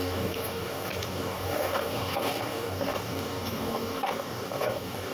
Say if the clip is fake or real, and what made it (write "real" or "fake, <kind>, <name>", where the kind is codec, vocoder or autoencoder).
fake, codec, DAC